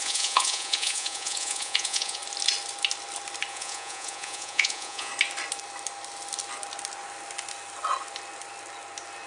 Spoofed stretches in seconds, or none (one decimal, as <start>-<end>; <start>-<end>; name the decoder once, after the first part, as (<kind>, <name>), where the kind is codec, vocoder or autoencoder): 0.0-2.2 (vocoder, Vocos); 3.5-5.1